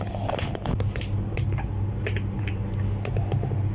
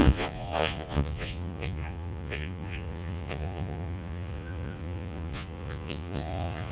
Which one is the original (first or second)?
first